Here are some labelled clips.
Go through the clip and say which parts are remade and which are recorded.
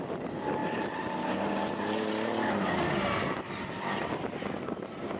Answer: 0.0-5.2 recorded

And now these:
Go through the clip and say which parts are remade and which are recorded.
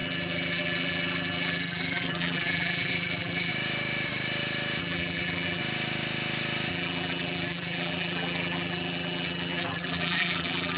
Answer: 0.0-3.5 remade; 3.5-4.8 recorded; 4.8-5.6 remade; 5.6-6.7 recorded; 6.7-10.8 remade